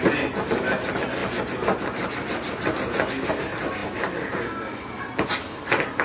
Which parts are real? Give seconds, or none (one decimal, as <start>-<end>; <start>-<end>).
0.0-6.0